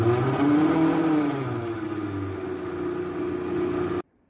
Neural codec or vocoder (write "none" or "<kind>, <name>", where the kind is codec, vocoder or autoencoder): none